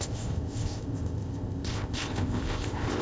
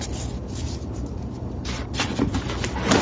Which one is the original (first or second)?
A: second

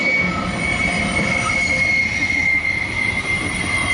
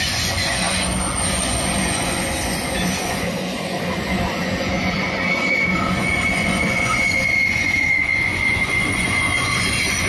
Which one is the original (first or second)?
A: first